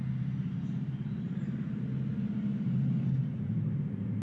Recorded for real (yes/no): no